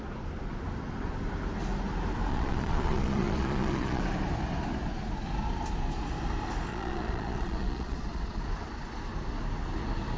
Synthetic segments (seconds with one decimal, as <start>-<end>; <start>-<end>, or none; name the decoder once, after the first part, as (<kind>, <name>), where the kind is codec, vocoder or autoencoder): 2.3-4.0 (vocoder, Vocos); 6.7-8.4